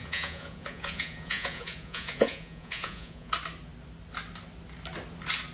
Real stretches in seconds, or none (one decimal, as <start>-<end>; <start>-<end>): 3.3-5.5